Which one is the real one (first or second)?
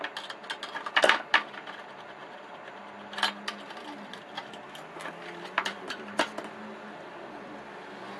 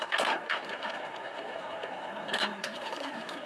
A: first